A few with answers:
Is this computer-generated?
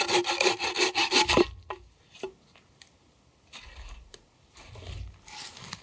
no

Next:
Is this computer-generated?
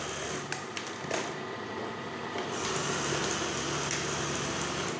no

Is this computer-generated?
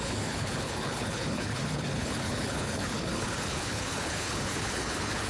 yes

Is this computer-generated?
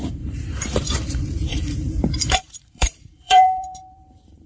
yes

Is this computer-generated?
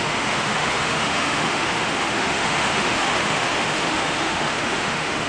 yes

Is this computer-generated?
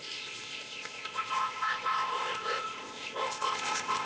yes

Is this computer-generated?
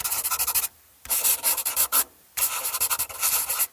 no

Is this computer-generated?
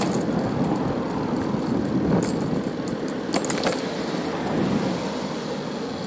no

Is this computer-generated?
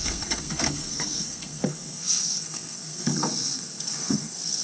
yes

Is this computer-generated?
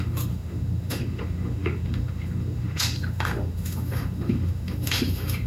yes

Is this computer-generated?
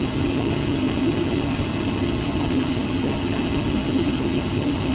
yes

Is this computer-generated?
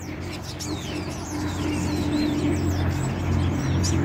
no